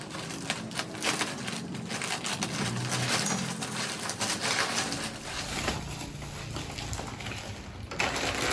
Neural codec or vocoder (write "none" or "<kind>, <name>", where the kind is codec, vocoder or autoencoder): none